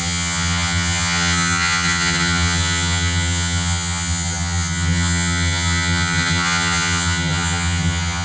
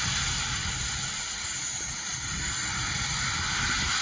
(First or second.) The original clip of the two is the second